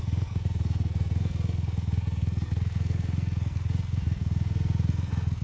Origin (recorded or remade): remade